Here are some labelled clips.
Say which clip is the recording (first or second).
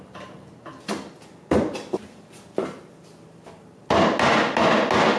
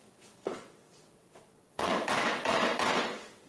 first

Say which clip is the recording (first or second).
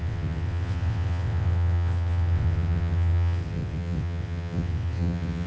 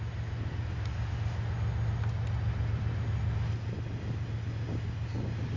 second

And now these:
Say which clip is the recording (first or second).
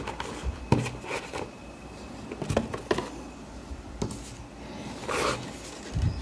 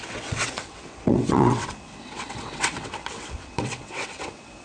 first